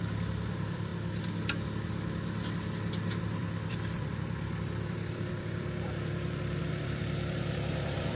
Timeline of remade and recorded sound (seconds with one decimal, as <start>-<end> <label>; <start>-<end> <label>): 0.0-0.9 remade; 0.9-3.2 recorded; 3.2-8.2 remade